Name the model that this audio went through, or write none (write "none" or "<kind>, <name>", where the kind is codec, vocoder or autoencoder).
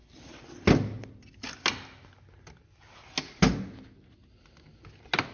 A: none